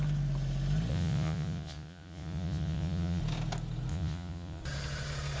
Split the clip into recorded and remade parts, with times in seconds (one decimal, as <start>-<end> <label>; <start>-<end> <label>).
0.0-0.9 recorded; 0.9-3.2 remade; 3.2-3.9 recorded; 3.9-4.6 remade; 4.6-5.4 recorded